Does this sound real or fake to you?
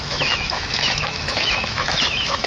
fake